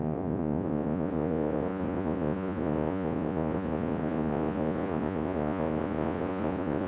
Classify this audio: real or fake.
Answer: fake